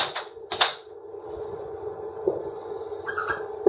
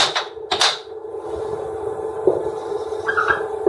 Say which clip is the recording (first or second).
second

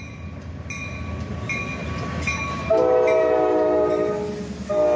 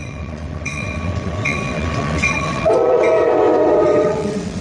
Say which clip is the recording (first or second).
first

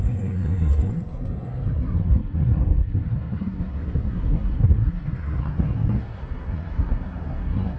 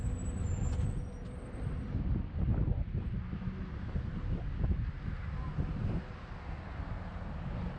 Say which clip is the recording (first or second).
second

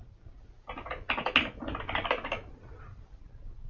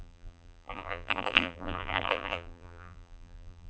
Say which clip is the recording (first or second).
first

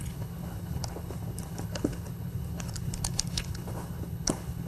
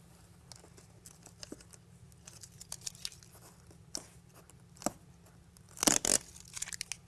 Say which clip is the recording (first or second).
second